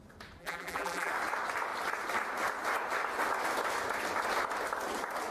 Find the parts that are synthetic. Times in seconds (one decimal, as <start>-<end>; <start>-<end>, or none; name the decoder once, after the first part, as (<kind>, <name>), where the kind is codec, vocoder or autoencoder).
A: 0.4-1.1 (vocoder, BigVGAN v2)